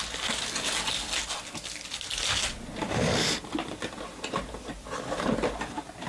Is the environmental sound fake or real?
real